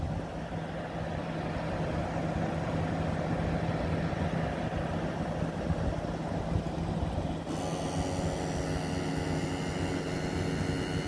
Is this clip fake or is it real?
real